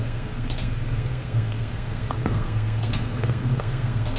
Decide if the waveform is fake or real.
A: fake